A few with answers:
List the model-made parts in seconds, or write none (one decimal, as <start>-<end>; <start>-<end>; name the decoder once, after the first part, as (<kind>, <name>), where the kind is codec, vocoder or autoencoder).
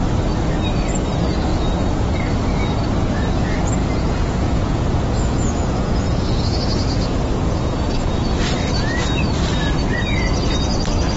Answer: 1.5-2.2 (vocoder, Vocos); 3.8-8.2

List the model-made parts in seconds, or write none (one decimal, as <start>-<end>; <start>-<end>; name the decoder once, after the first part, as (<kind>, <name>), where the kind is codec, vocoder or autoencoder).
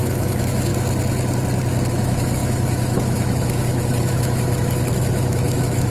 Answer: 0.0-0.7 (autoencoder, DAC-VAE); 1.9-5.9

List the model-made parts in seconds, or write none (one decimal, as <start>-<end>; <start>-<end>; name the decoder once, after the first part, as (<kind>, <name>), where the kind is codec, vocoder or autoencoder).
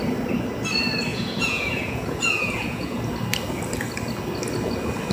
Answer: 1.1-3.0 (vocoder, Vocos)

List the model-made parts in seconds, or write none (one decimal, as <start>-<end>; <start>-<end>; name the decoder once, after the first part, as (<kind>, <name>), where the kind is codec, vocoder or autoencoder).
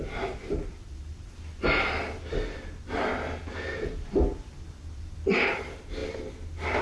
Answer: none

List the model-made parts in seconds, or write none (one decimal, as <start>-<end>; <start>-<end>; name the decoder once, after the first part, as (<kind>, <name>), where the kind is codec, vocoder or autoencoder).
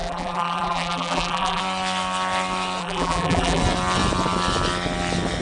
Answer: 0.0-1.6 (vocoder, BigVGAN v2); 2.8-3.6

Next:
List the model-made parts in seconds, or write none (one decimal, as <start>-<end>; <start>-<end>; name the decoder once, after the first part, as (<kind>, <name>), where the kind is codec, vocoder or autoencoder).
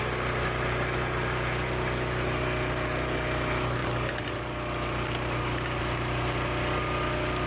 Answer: none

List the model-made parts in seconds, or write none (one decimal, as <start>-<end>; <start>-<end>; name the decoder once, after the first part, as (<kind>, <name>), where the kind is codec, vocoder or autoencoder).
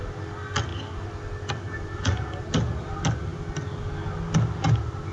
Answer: none